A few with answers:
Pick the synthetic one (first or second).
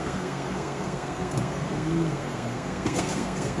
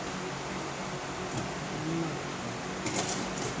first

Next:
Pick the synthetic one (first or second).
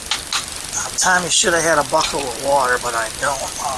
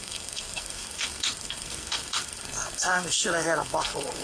second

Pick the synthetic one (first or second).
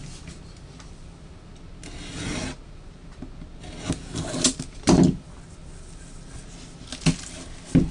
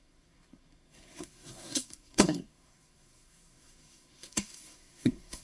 second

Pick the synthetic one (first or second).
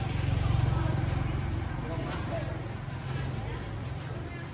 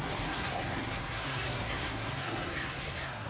second